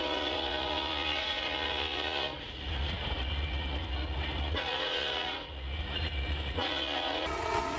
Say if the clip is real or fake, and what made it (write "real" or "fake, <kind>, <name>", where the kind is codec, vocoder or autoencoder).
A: fake, vocoder, Vocos